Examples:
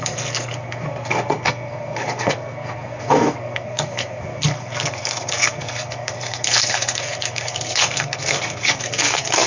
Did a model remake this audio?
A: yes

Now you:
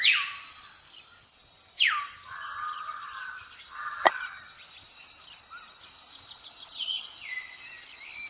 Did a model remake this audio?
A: yes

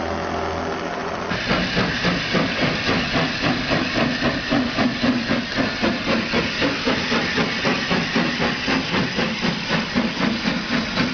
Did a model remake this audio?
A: no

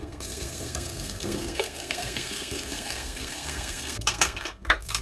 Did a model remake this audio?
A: yes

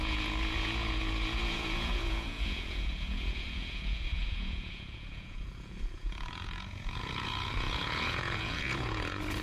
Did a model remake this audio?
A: yes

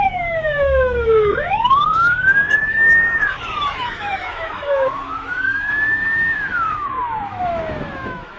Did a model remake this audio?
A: yes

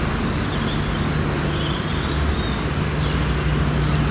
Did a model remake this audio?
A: no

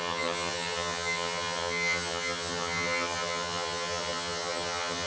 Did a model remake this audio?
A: yes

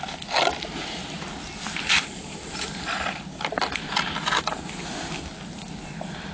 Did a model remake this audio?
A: no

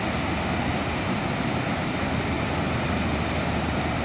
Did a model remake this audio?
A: no